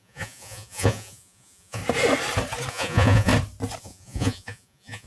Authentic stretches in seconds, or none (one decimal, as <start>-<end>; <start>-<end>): 1.8-2.7; 3.3-3.8